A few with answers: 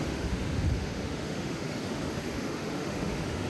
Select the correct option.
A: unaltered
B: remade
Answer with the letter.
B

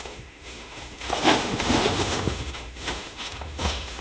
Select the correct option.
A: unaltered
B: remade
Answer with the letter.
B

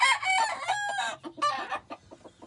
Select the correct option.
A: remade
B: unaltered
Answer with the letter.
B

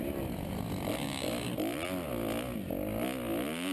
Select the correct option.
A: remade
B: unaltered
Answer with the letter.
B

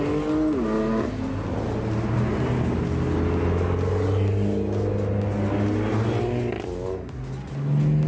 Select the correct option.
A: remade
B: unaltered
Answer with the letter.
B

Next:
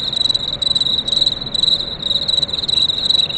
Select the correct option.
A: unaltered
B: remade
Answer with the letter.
A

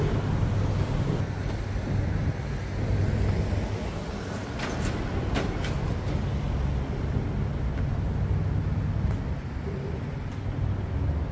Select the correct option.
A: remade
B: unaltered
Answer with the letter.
B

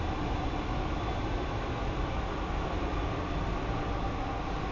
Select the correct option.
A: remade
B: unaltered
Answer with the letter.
B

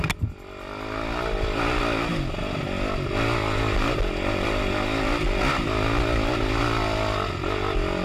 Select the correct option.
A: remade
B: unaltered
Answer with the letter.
B